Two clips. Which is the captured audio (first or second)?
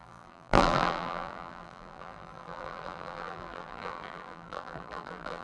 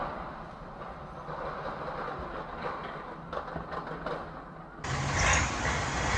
second